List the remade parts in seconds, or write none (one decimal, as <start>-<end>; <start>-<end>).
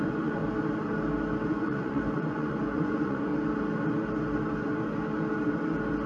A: 0.0-0.4; 1.5-3.3